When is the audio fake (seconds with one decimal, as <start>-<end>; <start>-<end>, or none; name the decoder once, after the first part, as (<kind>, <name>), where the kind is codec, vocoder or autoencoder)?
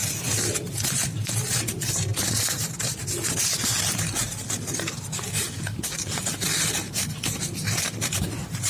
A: none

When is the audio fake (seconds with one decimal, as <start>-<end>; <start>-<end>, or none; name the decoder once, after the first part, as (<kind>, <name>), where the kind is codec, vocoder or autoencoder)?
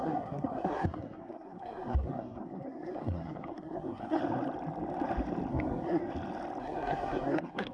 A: 0.0-4.2 (codec, SNAC); 5.5-6.0; 6.6-7.7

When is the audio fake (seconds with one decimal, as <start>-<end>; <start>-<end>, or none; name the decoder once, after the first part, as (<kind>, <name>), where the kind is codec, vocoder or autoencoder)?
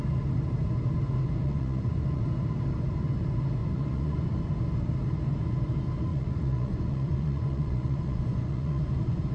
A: 1.4-2.2 (vocoder, Vocos); 3.6-4.4; 6.1-9.3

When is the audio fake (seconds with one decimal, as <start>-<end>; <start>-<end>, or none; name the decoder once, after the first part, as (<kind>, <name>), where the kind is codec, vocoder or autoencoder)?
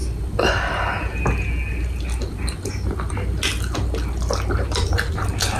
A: none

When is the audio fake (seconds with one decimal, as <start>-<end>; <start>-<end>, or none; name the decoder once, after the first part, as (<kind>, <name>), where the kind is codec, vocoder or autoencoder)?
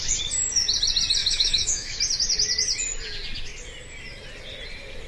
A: 1.2-2.0 (autoencoder, DAC-VAE)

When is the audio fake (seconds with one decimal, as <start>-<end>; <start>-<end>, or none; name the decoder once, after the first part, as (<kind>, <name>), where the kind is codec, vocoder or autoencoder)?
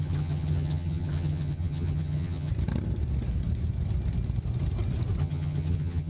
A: 0.0-2.5 (vocoder, HiFi-GAN); 5.2-6.1